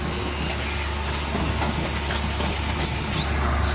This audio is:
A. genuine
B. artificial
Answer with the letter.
A